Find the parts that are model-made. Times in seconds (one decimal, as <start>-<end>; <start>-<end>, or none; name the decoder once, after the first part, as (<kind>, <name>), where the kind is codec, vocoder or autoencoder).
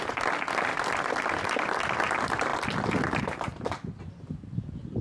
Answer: 0.7-2.0 (vocoder, BigVGAN v2); 2.5-3.2